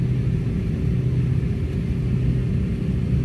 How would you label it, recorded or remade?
recorded